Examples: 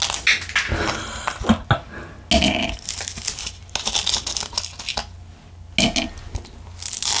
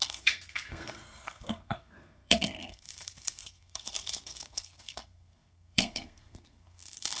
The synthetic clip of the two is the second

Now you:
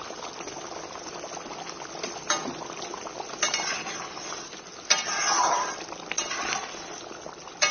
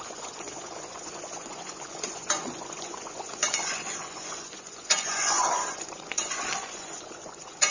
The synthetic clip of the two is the second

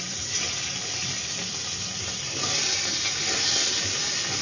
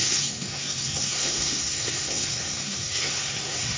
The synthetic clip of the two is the second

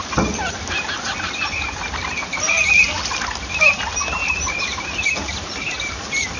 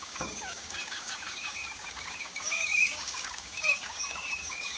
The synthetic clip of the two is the second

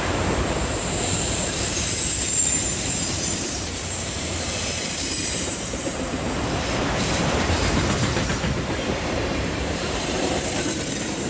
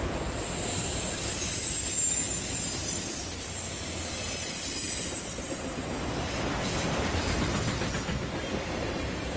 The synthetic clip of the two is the first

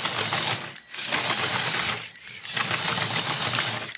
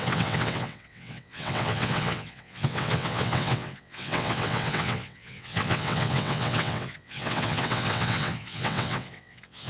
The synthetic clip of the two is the second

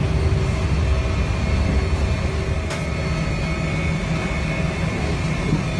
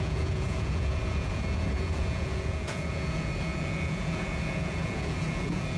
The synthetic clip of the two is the second